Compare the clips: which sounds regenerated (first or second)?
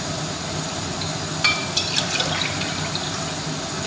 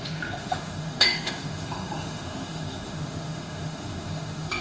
second